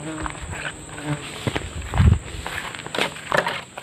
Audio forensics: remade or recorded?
recorded